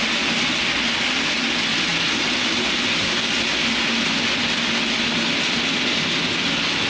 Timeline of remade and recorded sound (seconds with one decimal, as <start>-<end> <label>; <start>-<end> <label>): 0.0-6.9 recorded